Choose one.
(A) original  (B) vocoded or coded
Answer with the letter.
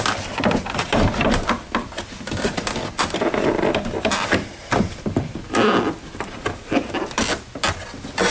A